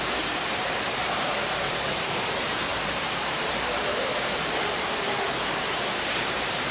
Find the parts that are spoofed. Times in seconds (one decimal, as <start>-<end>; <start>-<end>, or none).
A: 0.0-6.7